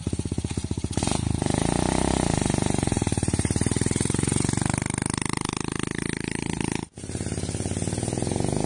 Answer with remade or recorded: recorded